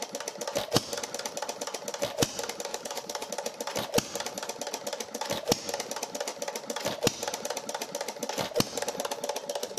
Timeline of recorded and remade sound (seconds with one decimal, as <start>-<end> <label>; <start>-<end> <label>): 0.0-2.7 recorded; 2.7-3.3 remade; 3.3-9.8 recorded